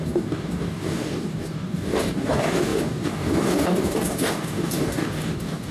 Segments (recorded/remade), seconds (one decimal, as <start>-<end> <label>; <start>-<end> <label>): 0.0-5.7 remade

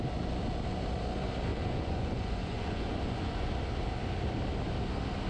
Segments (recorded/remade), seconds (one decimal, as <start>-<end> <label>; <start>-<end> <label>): 0.0-1.5 recorded; 1.5-3.5 remade; 3.5-5.3 recorded

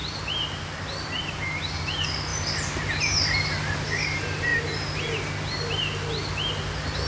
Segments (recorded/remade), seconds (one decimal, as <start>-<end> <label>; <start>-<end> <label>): 0.0-4.5 remade; 4.5-6.5 recorded; 6.5-7.1 remade

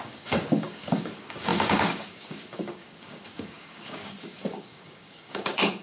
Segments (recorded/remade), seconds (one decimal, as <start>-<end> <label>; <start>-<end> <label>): 0.0-5.8 remade

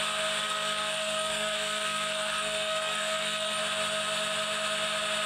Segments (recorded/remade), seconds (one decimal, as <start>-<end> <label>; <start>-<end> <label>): 0.0-0.4 recorded; 0.4-3.6 remade; 3.6-5.3 recorded

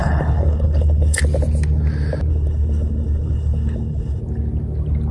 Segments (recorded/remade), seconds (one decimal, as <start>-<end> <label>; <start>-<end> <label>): 0.0-1.2 remade; 1.2-2.3 recorded; 2.3-4.2 remade; 4.2-5.1 recorded